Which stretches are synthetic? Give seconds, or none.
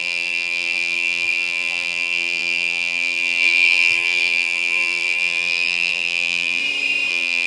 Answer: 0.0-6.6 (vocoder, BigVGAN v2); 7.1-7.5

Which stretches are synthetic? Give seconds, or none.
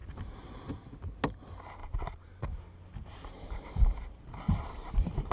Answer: 0.0-0.7 (vocoder, BigVGAN v2); 1.8-5.3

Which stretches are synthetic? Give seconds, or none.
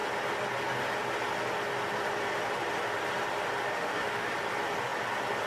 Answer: 3.7-4.3 (autoencoder, DAC-VAE)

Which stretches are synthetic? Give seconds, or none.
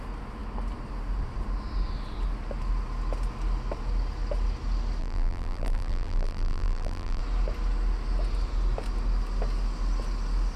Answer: 5.0-7.2 (vocoder, BigVGAN v2)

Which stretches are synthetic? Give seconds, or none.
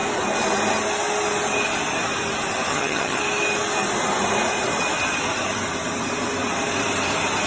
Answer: 2.7-3.2 (vocoder, HiFi-GAN)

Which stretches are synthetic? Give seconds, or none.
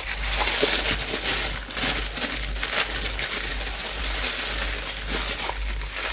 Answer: none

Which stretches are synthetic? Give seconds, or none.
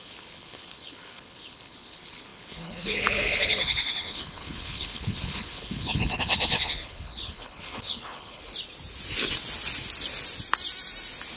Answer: 0.0-8.5 (codec, HILCodec)